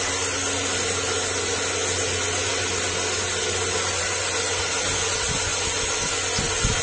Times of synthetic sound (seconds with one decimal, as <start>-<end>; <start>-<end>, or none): none